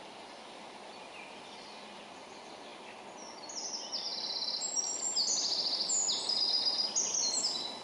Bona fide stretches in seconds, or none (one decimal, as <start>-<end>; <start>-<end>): 0.0-7.8